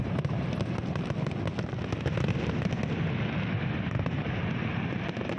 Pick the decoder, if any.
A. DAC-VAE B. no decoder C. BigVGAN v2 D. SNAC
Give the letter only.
B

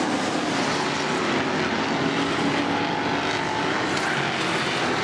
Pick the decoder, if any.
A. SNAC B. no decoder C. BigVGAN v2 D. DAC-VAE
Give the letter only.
B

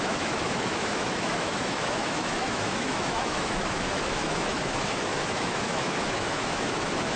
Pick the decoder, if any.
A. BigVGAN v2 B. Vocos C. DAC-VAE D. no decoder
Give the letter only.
C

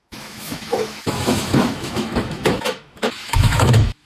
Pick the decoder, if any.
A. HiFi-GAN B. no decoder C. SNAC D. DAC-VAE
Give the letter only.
D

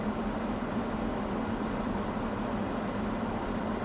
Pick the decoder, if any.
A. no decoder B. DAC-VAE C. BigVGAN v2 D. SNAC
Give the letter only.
A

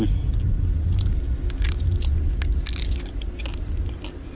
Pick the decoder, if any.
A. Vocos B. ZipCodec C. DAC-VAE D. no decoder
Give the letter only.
D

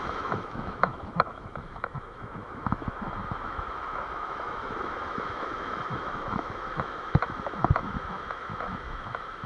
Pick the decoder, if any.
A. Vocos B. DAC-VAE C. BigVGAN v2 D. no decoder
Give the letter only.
B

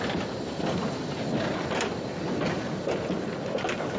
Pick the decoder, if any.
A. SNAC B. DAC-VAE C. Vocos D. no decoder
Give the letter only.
D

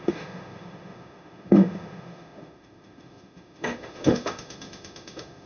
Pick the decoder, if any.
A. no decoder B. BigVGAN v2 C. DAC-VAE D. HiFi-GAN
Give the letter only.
C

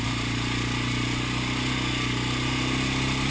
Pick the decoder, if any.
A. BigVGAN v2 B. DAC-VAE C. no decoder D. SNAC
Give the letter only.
C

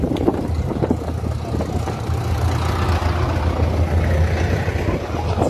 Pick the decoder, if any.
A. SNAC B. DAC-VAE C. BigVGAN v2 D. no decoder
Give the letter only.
D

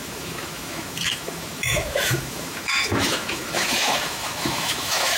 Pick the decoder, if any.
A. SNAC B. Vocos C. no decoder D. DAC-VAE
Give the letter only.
D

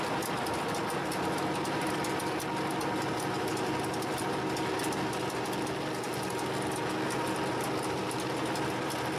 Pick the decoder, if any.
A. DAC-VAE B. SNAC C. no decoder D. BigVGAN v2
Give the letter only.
C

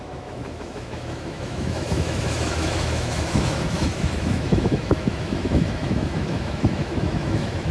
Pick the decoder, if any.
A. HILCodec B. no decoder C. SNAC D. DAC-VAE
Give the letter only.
D